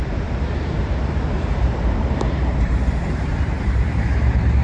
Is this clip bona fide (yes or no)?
no